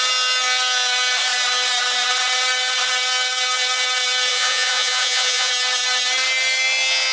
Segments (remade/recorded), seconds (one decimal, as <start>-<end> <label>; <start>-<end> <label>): 0.0-4.3 recorded; 4.3-5.5 remade; 5.5-7.1 recorded